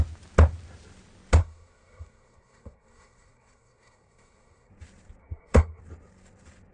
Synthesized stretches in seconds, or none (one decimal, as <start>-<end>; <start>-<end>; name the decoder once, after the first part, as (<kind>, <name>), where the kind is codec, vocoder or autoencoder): 1.4-4.7 (codec, SNAC); 5.2-5.8